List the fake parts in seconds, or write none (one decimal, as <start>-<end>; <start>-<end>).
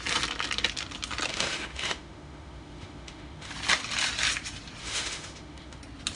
1.3-3.5; 4.8-5.8